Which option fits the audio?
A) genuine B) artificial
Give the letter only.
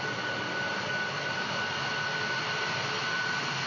A